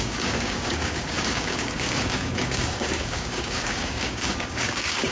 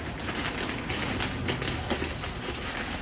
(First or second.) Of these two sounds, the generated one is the first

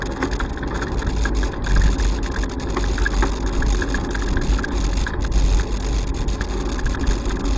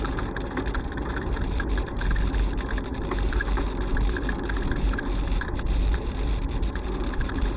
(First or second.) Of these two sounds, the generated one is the second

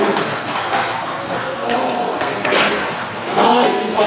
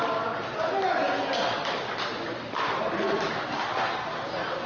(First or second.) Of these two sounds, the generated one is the first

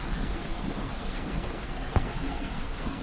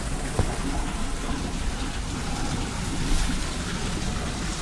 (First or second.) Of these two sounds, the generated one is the first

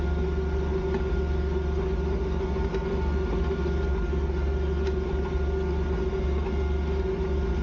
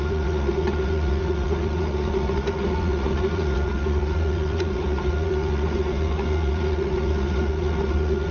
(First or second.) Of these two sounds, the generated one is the second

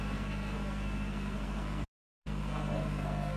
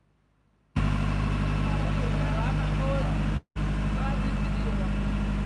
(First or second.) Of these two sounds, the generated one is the first